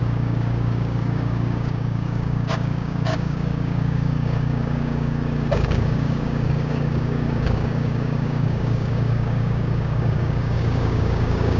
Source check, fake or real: fake